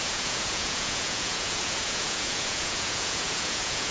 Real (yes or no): no